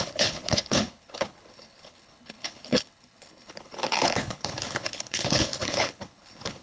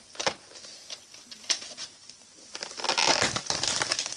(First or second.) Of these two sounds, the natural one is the second